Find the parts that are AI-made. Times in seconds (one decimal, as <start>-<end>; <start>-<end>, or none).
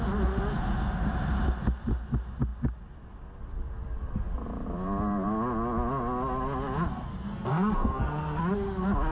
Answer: 7.1-8.4